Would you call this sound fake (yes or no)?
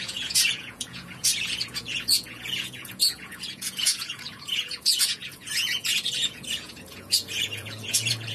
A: yes